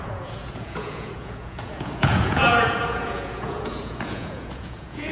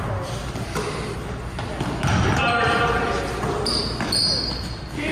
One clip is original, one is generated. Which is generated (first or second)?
first